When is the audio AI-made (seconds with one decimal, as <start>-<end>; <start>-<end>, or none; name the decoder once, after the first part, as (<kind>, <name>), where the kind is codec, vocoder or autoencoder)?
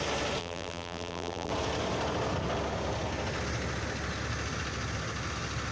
0.4-1.5 (vocoder, BigVGAN v2)